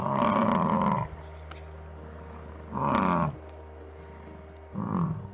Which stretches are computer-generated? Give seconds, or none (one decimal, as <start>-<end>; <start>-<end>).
none